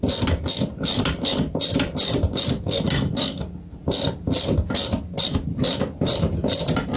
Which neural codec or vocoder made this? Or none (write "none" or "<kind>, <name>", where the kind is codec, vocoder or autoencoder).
none